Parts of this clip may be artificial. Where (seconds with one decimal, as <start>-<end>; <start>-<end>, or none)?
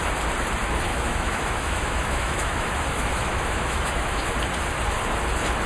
0.9-4.3